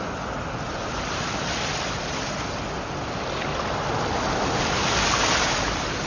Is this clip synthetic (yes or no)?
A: no